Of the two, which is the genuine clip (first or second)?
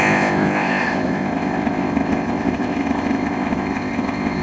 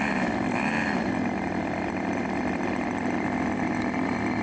second